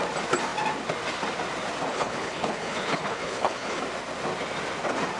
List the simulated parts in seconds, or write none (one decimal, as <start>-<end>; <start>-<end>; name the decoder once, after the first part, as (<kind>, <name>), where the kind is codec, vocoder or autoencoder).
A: 1.9-3.8 (codec, HILCodec)